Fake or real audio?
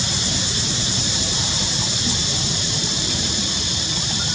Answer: fake